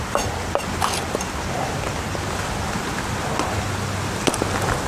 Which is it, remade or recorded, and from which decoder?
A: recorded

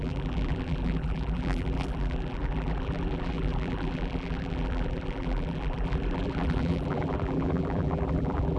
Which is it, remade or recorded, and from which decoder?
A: remade, vocoder, BigVGAN v2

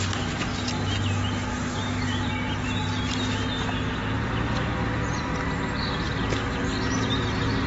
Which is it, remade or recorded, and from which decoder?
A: recorded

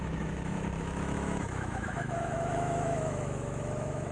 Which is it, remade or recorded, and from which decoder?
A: remade, autoencoder, DAC-VAE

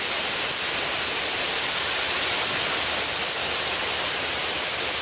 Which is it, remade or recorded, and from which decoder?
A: recorded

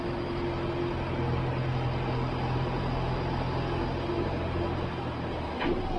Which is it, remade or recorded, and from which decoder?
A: recorded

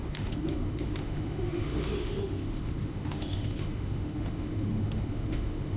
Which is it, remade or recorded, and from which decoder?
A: remade, autoencoder, DAC-VAE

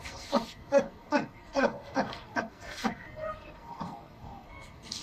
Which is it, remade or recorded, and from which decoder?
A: remade, codec, SNAC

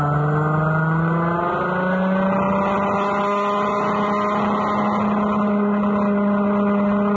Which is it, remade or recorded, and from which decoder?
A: recorded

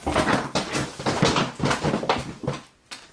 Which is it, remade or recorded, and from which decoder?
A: recorded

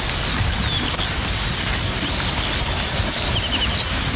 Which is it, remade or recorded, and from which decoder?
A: recorded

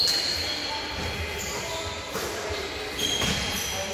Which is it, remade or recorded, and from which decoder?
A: recorded